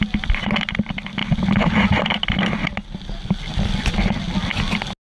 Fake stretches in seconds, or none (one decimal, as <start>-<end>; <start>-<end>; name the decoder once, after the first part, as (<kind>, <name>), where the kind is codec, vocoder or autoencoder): none